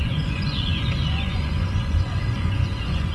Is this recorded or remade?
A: remade